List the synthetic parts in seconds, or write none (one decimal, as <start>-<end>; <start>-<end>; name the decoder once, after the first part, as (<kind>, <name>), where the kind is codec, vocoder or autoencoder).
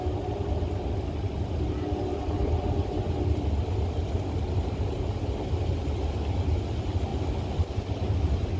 none